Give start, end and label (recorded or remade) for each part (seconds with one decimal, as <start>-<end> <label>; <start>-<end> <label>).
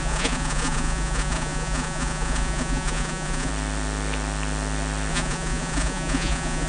0.0-3.5 remade; 3.5-5.1 recorded; 5.1-6.7 remade